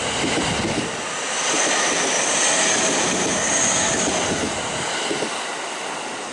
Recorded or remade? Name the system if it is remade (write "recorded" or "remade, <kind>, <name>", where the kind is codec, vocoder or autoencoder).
recorded